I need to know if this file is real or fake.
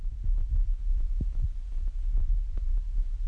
real